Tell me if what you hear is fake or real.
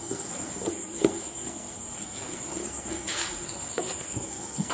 fake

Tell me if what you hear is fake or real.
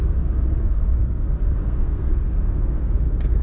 fake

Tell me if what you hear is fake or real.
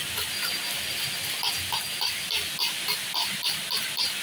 real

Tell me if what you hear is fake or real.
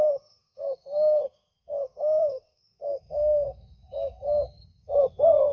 fake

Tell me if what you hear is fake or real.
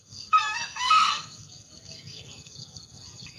fake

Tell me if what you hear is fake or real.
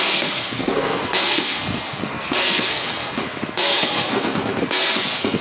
fake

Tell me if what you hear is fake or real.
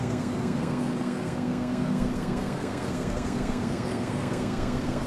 fake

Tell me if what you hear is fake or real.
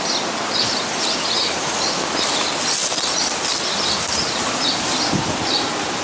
real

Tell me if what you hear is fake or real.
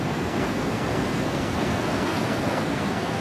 fake